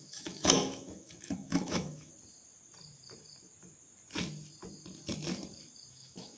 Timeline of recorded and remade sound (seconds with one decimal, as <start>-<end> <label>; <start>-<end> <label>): 0.0-2.1 remade; 2.1-5.9 recorded; 5.9-6.4 remade